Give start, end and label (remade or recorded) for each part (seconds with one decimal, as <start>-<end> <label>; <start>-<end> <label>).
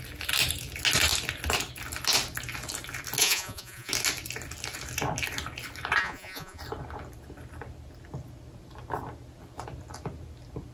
0.0-3.2 recorded; 3.2-3.9 remade; 3.9-6.0 recorded; 6.0-6.6 remade; 6.6-10.7 recorded